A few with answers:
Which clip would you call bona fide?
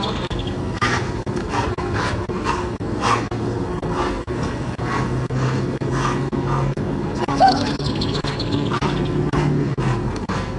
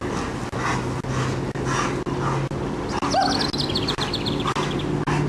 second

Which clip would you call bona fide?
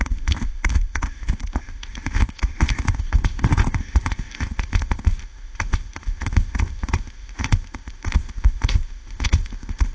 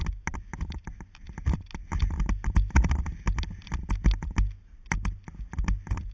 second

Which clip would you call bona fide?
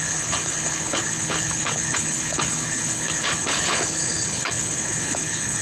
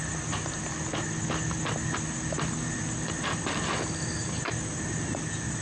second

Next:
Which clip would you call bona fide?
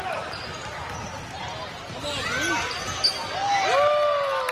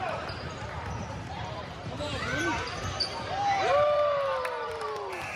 first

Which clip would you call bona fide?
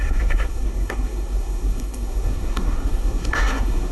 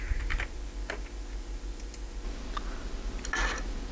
second